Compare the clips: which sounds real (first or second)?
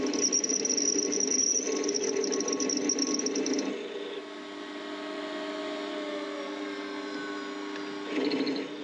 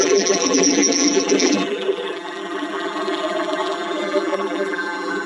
first